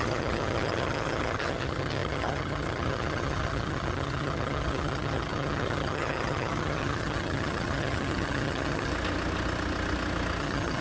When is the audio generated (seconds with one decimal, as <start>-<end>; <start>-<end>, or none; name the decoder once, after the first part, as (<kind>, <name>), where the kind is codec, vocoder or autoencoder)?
0.0-8.9 (vocoder, HiFi-GAN); 10.4-10.8